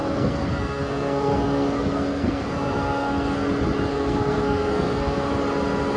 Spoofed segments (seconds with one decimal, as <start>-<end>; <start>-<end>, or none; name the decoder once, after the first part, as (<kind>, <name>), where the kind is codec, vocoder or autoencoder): 0.0-3.5 (codec, SNAC); 3.9-5.3